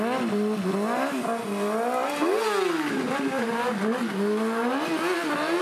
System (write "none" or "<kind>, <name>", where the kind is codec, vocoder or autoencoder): none